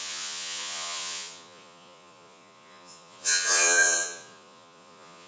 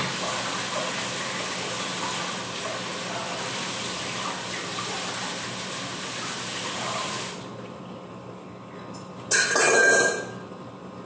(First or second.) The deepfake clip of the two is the first